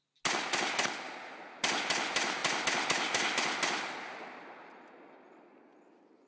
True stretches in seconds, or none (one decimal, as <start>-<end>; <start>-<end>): 0.0-6.3